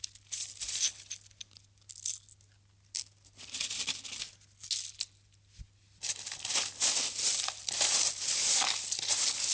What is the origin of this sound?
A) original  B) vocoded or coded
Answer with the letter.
A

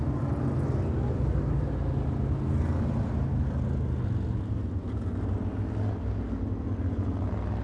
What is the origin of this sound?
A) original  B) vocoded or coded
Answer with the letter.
A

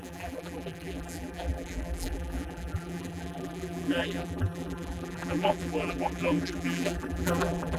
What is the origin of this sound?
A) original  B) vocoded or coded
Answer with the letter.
B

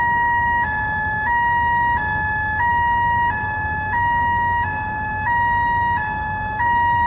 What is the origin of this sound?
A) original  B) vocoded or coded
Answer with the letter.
B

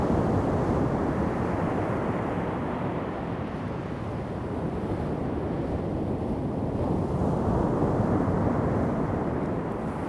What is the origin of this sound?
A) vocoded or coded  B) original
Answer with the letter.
A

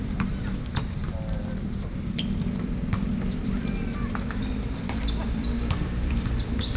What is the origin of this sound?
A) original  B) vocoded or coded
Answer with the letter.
B